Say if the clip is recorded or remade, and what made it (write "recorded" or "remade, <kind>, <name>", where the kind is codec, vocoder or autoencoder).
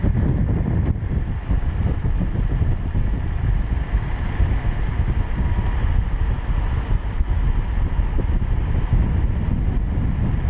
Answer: recorded